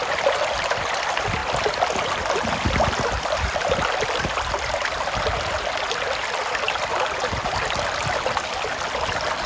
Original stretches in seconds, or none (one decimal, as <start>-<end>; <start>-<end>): 0.0-9.5